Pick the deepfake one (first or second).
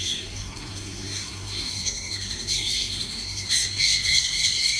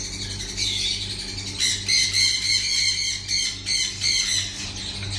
first